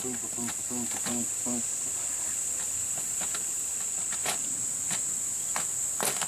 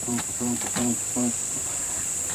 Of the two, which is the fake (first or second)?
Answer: second